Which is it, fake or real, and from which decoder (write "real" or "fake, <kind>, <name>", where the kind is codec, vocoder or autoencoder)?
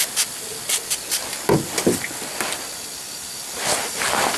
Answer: real